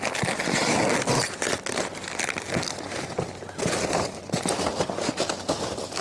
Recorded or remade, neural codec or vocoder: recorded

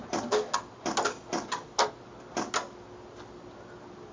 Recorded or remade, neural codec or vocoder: recorded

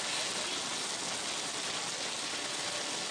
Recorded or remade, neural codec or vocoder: recorded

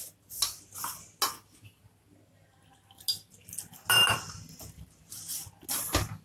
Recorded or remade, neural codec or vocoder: recorded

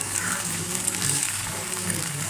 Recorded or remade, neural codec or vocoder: remade, codec, DAC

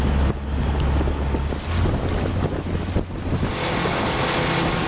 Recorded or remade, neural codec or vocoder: recorded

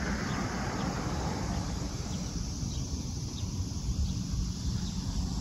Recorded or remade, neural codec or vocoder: recorded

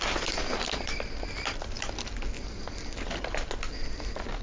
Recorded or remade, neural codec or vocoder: recorded